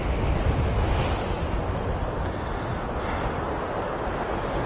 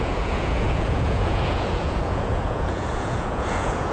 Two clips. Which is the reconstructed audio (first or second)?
second